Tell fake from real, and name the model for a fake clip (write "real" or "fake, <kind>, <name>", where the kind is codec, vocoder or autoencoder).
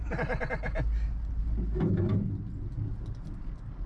real